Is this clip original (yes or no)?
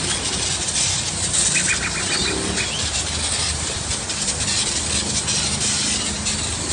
yes